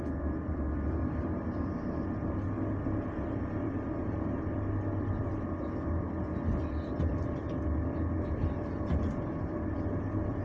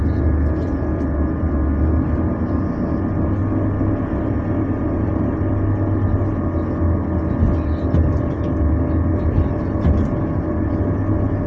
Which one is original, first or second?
second